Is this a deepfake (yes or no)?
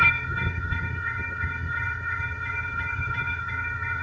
yes